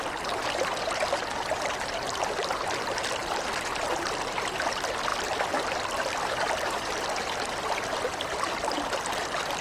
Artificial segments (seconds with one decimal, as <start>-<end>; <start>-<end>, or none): none